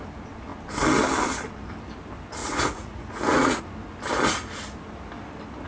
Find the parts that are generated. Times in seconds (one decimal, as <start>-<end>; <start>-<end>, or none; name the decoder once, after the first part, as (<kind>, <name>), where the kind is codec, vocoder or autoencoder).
2.4-3.6 (vocoder, Vocos)